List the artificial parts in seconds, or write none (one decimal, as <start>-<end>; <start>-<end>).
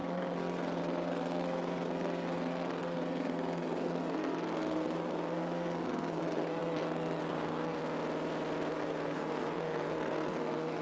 0.0-7.8; 8.7-10.8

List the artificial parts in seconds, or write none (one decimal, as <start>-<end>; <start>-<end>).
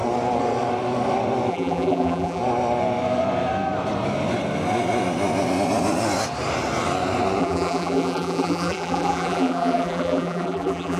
1.5-2.4; 7.4-11.0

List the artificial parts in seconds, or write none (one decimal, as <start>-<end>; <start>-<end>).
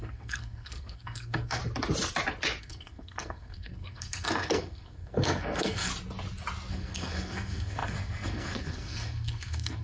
0.0-1.6; 2.6-5.9; 6.7-9.8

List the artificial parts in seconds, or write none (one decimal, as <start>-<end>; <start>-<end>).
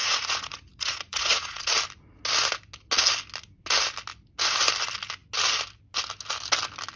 0.0-1.6